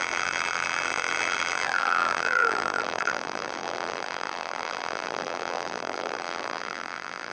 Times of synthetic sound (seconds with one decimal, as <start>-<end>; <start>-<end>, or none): 0.0-7.3

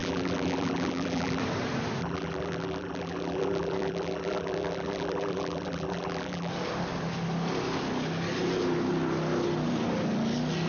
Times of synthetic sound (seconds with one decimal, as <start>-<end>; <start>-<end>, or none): 0.0-1.4; 2.0-6.5

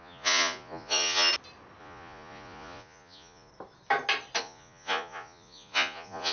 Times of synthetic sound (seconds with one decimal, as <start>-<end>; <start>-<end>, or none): 0.0-1.3; 1.8-3.5; 4.4-6.3

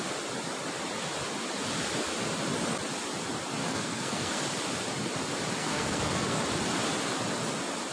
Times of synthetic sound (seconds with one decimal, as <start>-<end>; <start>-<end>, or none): 3.6-4.4; 5.6-6.4

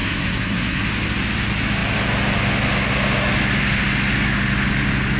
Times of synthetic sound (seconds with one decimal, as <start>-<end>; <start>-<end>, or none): 0.0-0.8

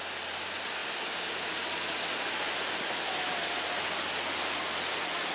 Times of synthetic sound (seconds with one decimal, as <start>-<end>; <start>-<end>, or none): none

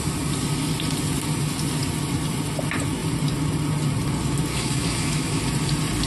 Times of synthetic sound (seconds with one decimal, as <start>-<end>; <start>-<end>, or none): 4.5-5.4